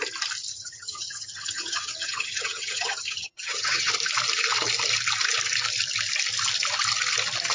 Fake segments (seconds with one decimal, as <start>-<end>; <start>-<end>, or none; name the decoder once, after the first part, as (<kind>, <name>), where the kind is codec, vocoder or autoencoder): 0.5-3.9 (vocoder, HiFi-GAN)